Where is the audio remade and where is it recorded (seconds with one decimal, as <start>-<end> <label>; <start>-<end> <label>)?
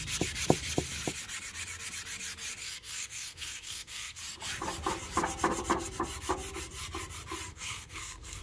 0.0-2.6 recorded; 2.6-4.2 remade; 4.2-7.5 recorded; 7.5-8.4 remade